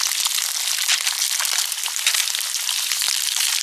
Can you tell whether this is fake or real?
real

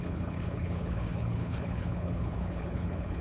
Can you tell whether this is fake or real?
fake